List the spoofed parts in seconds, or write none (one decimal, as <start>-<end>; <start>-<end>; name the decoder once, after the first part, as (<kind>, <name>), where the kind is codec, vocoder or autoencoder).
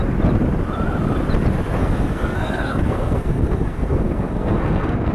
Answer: 1.8-5.1 (codec, SNAC)